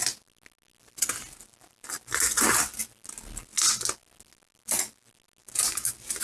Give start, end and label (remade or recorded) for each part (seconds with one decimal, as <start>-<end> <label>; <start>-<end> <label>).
0.0-6.2 recorded